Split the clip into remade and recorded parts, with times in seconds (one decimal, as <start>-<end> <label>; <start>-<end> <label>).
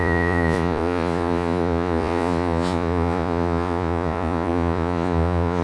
0.0-5.6 remade